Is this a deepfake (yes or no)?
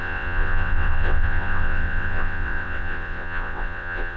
yes